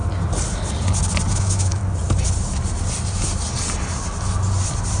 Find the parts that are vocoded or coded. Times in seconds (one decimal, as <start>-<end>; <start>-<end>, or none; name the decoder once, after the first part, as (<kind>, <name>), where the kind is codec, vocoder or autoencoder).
1.3-1.8 (autoencoder, DAC-VAE)